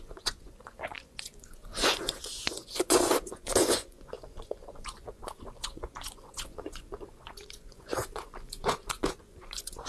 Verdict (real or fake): fake